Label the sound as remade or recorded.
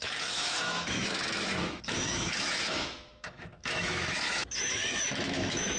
remade